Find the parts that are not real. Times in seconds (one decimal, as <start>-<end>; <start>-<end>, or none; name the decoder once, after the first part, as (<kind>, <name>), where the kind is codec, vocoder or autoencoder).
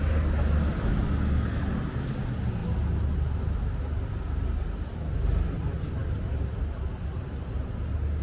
none